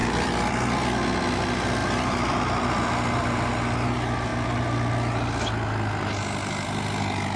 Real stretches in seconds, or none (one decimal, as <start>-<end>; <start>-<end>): 0.7-1.8; 3.5-7.4